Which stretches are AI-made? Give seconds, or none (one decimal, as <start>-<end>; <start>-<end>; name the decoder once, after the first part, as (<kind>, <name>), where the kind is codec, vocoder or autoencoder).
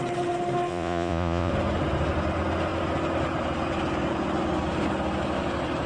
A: 0.7-1.5 (vocoder, Vocos)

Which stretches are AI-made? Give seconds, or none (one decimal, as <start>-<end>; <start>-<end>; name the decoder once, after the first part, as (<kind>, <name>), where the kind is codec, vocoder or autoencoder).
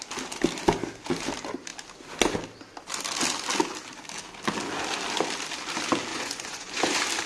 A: 6.1-6.8 (vocoder, Vocos)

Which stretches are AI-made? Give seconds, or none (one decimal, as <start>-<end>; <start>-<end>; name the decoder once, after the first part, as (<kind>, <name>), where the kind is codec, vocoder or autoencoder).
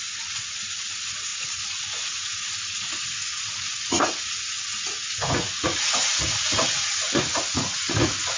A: 0.0-8.4 (vocoder, Vocos)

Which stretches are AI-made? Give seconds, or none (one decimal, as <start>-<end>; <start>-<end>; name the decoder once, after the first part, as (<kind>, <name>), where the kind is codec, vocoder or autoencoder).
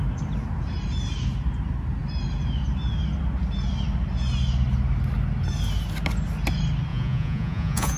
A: 6.9-8.0 (vocoder, Vocos)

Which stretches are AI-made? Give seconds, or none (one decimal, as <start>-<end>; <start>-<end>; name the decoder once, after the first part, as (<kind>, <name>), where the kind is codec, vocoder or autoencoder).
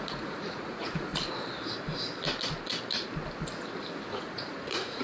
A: 0.0-1.1 (vocoder, Vocos); 4.1-5.0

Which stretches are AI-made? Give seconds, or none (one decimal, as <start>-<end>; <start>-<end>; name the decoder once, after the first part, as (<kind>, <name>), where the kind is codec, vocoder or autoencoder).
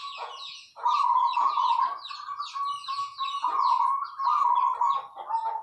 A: 0.0-1.8 (vocoder, Vocos); 2.8-4.1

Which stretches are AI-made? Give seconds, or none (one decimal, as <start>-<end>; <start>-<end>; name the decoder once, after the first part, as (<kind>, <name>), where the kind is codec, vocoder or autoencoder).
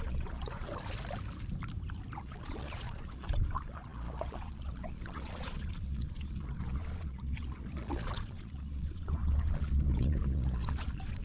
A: 0.0-0.7 (vocoder, Vocos); 2.2-11.2